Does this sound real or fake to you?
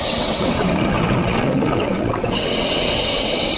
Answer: fake